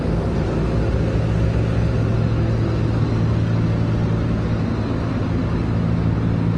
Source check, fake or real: real